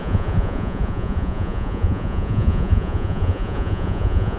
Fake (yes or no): yes